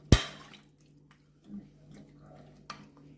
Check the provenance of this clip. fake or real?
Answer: real